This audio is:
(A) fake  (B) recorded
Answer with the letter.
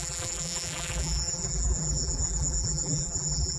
A